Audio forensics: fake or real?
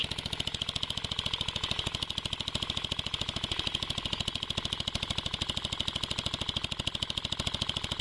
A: real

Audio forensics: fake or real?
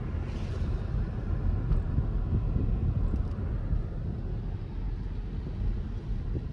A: real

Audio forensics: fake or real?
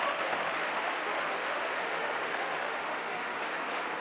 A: fake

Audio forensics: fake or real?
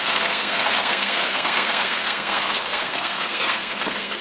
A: fake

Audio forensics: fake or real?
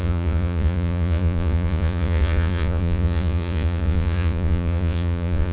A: fake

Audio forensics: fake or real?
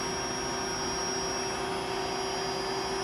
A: real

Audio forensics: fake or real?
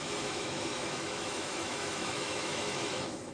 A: fake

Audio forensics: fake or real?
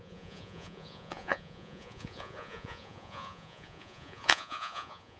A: fake